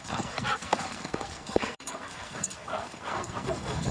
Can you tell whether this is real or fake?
fake